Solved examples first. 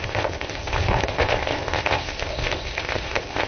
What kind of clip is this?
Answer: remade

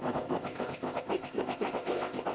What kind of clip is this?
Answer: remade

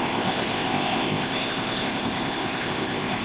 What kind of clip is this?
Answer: remade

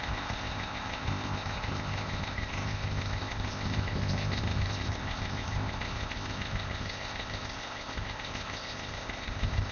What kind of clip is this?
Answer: remade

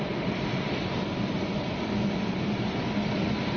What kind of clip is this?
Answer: recorded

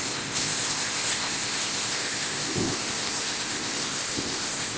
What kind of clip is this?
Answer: remade